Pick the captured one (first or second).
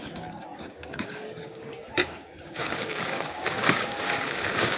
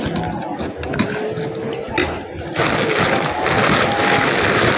second